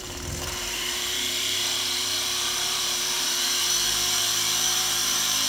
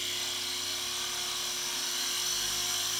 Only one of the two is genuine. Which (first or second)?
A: second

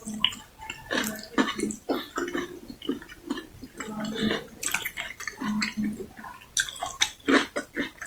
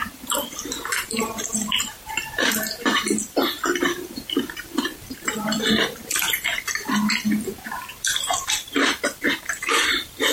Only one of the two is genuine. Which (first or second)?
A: first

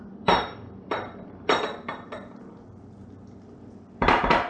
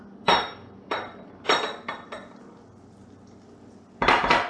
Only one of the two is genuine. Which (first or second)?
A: second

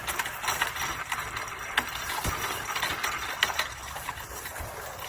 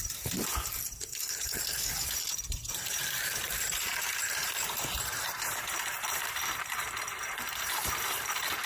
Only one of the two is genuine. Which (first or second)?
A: first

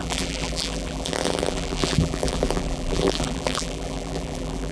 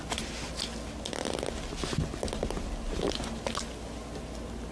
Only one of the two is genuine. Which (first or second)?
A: second